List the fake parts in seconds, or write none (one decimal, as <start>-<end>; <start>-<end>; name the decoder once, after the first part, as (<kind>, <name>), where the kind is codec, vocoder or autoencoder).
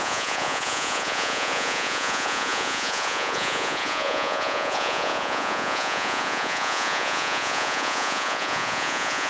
0.0-9.3 (vocoder, Vocos)